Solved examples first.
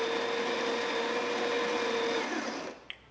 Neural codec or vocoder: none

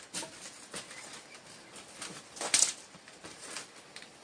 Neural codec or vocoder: none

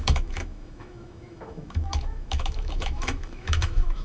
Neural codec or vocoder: autoencoder, DAC-VAE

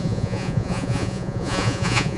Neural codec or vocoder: vocoder, Vocos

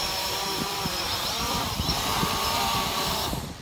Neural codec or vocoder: vocoder, BigVGAN v2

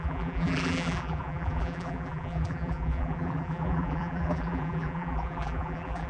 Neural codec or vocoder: vocoder, BigVGAN v2